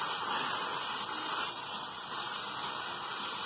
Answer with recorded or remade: recorded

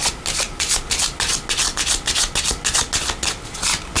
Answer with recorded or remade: recorded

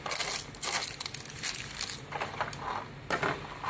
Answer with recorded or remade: recorded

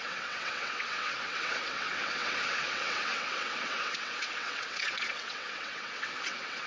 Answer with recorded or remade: remade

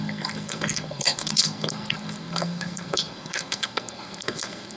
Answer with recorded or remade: remade